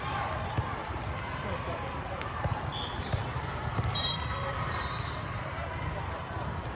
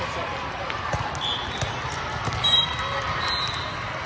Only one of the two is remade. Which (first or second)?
first